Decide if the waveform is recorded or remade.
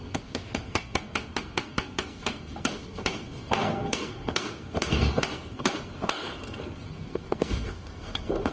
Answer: remade